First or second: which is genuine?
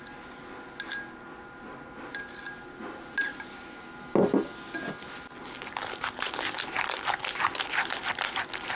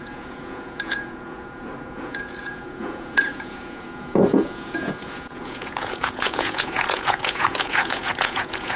first